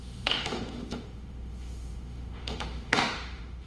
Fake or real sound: fake